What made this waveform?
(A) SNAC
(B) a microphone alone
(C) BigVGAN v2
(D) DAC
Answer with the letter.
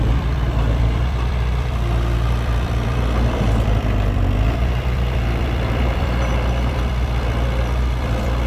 C